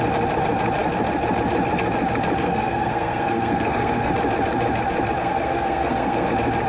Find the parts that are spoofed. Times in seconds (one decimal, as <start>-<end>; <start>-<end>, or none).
2.4-4.1; 5.2-6.3